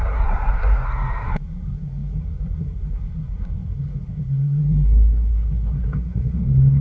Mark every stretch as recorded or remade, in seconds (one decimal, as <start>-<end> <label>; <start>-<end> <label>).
0.0-6.8 remade